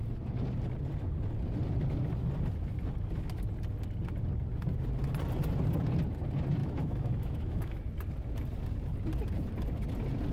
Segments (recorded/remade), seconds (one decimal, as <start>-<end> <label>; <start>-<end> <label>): 0.0-6.6 recorded; 6.6-7.8 remade; 7.8-10.3 recorded